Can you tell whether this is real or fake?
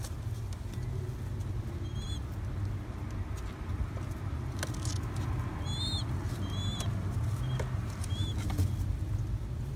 real